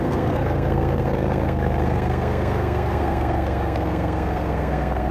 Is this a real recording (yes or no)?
no